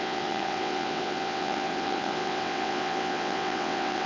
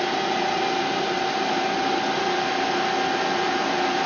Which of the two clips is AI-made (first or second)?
first